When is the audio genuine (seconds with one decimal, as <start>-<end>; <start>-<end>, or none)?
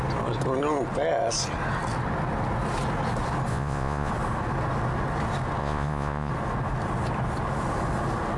0.0-3.5; 4.1-5.6; 6.3-8.4